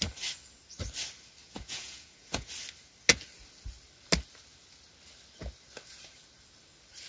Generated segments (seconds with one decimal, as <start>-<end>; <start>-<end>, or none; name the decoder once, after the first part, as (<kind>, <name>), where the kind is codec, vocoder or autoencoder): 1.4-2.5 (vocoder, Vocos)